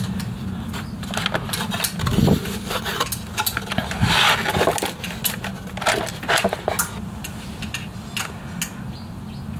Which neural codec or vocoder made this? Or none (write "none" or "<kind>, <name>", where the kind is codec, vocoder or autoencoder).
none